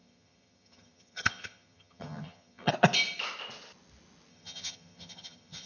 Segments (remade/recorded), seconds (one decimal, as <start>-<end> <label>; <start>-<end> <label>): 0.0-2.7 remade; 2.7-4.3 recorded; 4.3-5.7 remade